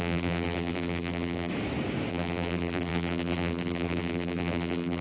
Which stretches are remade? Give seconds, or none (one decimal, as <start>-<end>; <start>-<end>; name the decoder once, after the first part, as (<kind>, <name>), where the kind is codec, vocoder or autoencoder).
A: 0.0-1.5 (vocoder, BigVGAN v2); 2.1-5.0